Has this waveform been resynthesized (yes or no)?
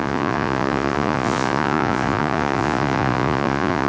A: yes